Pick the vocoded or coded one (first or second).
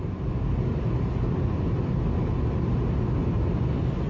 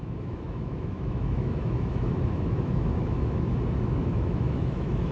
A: second